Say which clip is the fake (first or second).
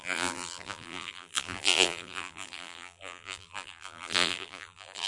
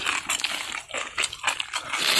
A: first